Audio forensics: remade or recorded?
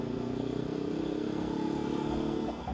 remade